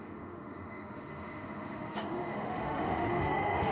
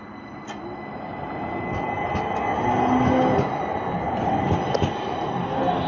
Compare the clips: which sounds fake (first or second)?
first